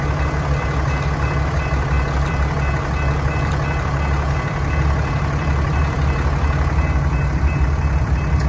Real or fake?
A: real